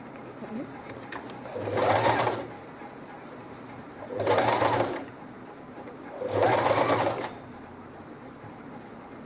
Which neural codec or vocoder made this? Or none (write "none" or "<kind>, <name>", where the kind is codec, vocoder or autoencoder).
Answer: vocoder, BigVGAN v2